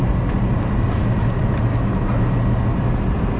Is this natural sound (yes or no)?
yes